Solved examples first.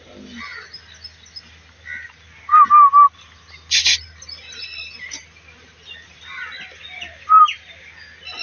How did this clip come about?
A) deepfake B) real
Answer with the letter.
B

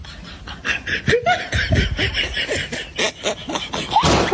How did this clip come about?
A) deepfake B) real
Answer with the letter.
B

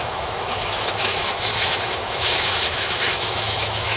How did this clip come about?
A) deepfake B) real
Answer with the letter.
A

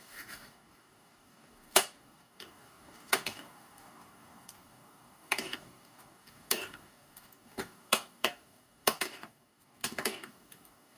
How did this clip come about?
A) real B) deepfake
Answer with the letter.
B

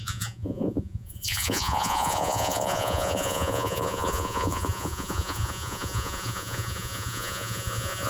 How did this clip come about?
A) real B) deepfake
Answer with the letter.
B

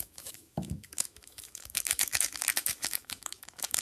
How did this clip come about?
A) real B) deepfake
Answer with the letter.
B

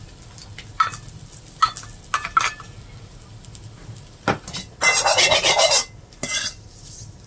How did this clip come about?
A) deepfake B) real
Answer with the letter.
B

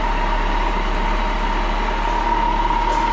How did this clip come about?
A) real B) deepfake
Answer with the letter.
A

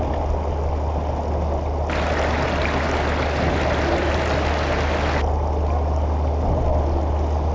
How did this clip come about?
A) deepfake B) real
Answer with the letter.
B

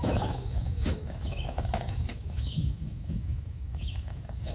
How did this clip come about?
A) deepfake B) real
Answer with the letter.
A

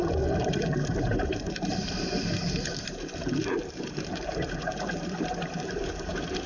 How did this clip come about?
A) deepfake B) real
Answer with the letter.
A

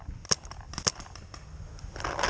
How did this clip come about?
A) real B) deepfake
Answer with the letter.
A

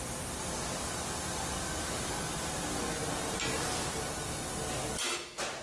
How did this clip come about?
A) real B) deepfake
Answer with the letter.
A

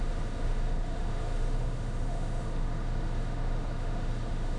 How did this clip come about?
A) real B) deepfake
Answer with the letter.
B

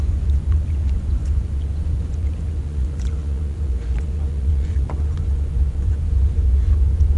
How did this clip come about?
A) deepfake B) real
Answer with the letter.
A